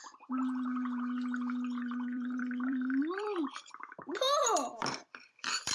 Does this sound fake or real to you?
fake